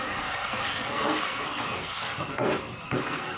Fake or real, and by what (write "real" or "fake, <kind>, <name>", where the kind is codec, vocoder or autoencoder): fake, codec, SNAC